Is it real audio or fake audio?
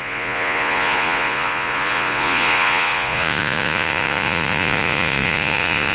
fake